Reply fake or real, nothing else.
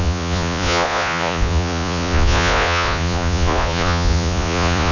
fake